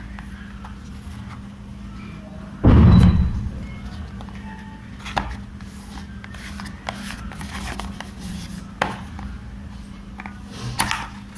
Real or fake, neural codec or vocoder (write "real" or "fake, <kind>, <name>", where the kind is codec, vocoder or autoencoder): real